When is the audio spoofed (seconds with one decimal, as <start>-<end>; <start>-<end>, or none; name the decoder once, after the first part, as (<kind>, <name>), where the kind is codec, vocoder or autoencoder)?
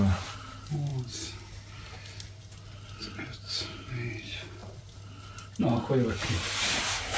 none